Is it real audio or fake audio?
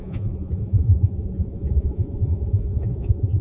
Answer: fake